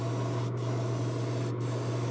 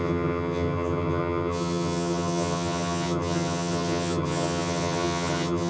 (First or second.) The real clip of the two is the first